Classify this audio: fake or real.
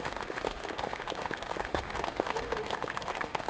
fake